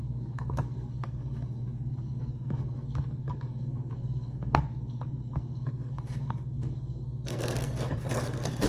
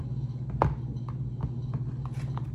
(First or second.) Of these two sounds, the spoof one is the first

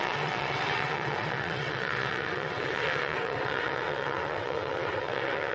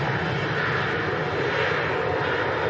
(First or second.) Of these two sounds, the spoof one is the first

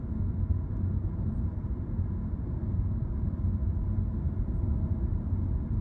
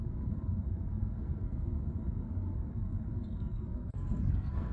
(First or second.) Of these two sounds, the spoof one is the second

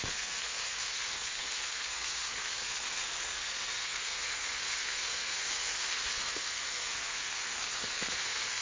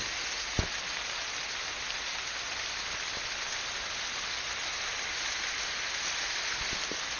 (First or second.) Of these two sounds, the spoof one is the first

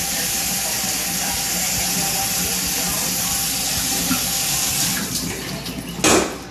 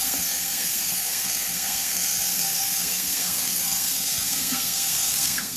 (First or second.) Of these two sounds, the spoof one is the second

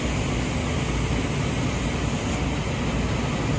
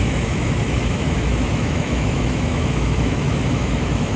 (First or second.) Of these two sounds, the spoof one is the second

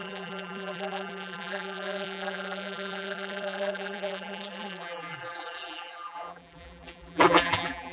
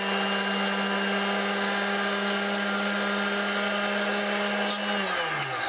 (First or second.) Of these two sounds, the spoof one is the first